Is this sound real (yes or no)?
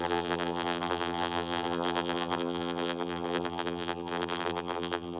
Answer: no